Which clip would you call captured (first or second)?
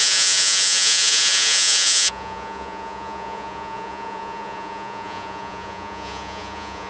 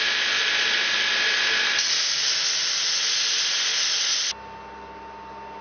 second